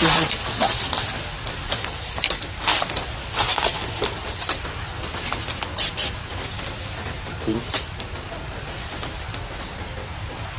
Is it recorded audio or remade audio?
recorded